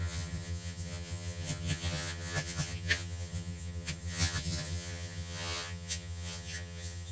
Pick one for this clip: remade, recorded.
remade